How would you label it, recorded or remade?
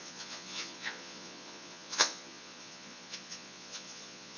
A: remade